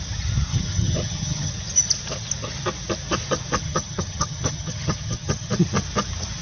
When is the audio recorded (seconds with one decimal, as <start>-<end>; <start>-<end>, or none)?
0.0-0.5; 1.5-3.6; 5.5-6.4